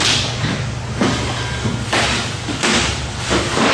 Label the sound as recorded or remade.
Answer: recorded